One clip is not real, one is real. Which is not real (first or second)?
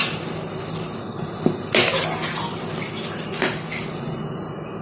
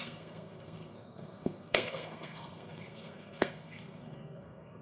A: second